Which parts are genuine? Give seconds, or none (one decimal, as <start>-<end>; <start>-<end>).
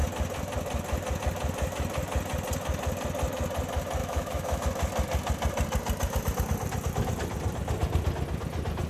0.0-4.0; 4.6-8.9